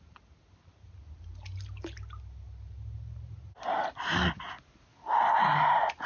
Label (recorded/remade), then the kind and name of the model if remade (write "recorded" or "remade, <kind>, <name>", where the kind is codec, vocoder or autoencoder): recorded